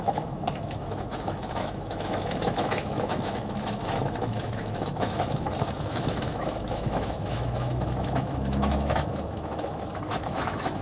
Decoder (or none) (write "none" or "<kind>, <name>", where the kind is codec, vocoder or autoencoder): autoencoder, DAC-VAE